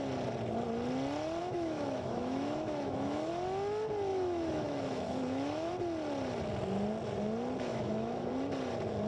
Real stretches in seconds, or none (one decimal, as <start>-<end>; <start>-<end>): 0.0-1.4; 3.3-4.1; 5.7-7.7; 8.3-9.1